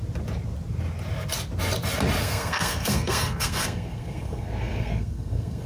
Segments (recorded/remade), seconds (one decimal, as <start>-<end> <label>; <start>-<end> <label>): 0.0-2.2 recorded; 2.2-5.7 remade

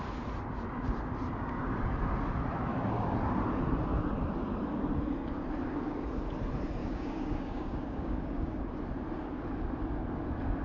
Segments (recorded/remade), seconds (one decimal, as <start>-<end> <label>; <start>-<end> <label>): 0.0-6.8 recorded; 6.8-8.6 remade; 8.6-10.6 recorded

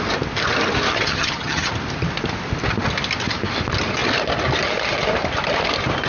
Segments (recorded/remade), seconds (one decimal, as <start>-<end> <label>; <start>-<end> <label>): 0.0-0.9 recorded; 0.9-1.7 remade; 1.7-6.1 recorded

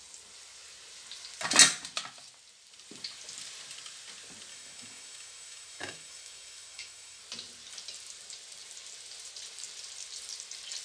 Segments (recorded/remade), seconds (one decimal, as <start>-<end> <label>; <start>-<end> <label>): 0.0-4.5 recorded; 4.5-7.2 remade; 7.2-10.8 recorded

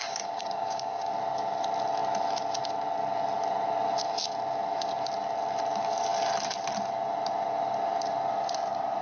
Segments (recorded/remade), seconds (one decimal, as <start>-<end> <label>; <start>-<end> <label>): 0.0-1.1 remade; 1.1-9.0 recorded